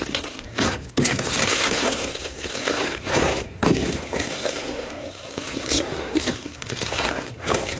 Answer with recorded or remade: remade